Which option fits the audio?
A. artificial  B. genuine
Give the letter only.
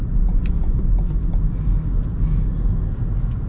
B